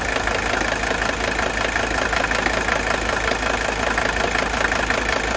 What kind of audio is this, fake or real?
real